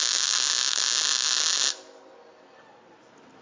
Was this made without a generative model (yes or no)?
yes